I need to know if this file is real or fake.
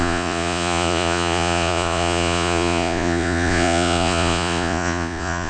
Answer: fake